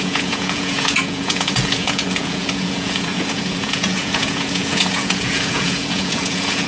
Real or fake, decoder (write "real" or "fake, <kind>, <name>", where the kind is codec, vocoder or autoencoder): fake, vocoder, Vocos